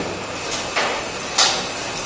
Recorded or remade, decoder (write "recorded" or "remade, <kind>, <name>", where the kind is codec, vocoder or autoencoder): recorded